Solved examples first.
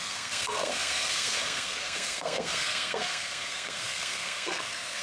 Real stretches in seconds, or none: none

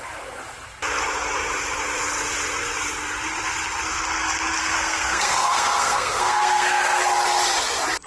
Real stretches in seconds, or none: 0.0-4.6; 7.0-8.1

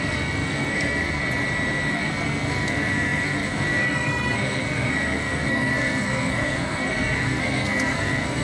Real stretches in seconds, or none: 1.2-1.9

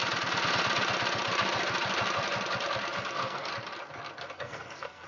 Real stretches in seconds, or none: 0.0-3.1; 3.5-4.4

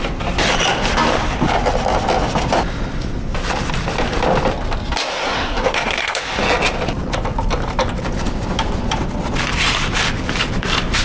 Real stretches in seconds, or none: 0.0-5.1; 6.2-11.0

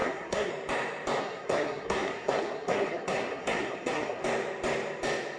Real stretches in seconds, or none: 0.5-1.2; 4.2-5.4

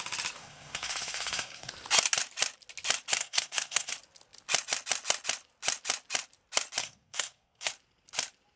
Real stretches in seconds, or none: 0.0-0.4; 1.7-3.2; 3.9-6.8; 7.7-8.6

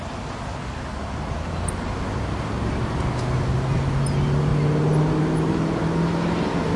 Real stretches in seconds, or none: 0.0-6.8